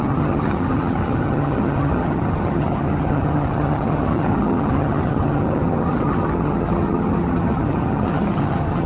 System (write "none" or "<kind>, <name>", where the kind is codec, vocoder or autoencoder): vocoder, HiFi-GAN